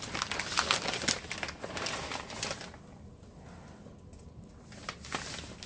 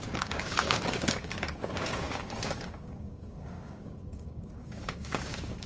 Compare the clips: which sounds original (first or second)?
first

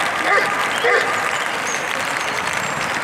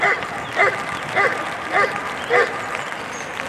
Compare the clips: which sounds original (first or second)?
second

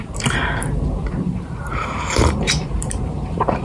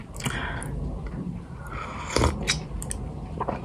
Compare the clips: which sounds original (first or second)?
second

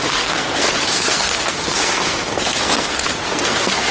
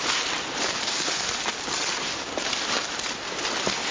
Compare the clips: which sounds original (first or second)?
second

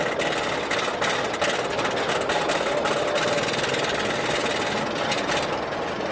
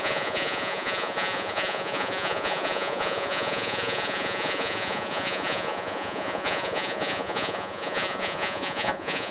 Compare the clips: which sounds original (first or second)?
first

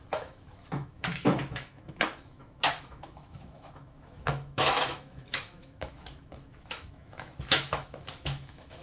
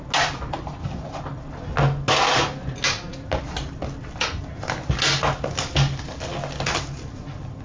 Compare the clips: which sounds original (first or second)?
second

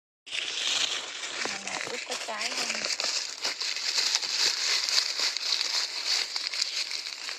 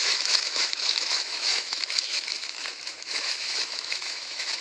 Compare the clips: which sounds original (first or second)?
first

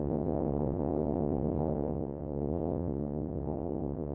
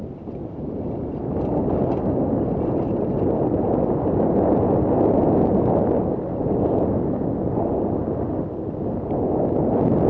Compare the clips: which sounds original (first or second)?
second